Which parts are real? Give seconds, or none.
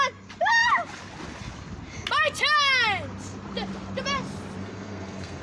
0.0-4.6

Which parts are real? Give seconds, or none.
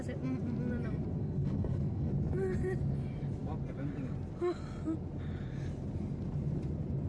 0.0-1.2; 2.1-7.1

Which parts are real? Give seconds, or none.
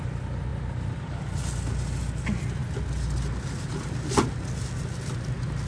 0.0-5.7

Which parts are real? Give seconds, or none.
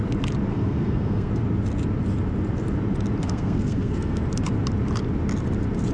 0.0-0.5; 1.3-3.2; 4.2-5.9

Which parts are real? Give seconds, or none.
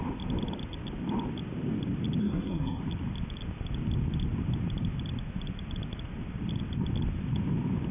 0.0-2.2; 2.8-7.9